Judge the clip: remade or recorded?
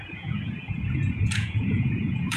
remade